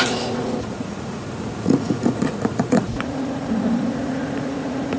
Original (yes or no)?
no